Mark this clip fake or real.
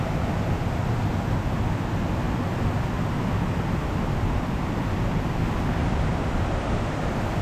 real